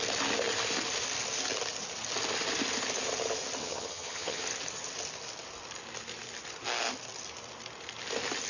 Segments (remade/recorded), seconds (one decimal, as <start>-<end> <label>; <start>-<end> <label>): 0.0-3.6 recorded; 3.6-4.4 remade; 4.4-8.5 recorded